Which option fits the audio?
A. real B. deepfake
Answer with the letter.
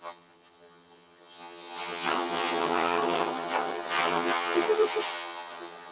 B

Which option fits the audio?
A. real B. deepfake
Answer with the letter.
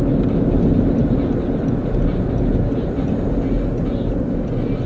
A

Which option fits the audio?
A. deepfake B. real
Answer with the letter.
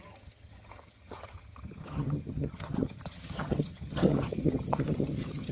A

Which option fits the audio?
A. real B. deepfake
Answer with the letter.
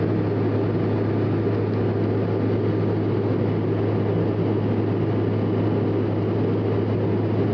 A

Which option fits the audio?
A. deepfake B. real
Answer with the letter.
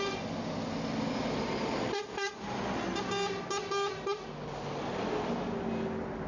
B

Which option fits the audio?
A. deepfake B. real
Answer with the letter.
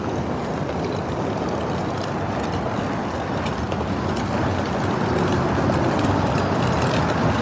B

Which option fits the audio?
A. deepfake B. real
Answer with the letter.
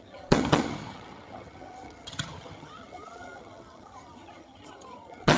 A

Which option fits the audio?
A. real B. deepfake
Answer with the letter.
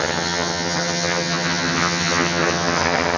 B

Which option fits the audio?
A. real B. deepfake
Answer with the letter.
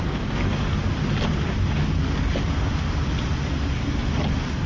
A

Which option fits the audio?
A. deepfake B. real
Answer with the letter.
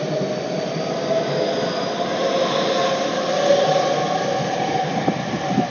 B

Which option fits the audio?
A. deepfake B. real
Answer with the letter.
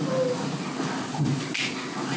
B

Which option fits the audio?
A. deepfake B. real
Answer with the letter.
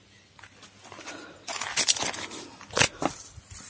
B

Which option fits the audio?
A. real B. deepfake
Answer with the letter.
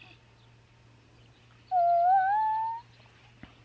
A